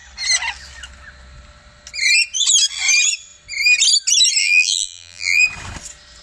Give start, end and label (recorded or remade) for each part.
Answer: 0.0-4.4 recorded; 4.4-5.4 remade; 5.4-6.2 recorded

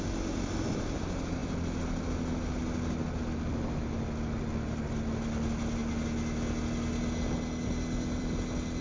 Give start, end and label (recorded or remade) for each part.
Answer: 0.0-8.8 recorded

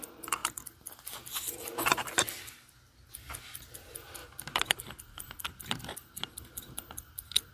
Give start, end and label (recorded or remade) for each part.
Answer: 0.0-7.5 recorded

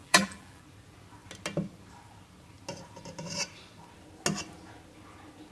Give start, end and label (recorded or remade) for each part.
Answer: 0.0-0.6 remade; 0.6-5.5 recorded

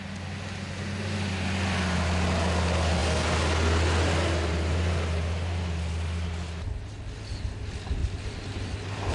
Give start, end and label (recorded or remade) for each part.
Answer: 0.0-8.0 recorded; 8.0-9.1 remade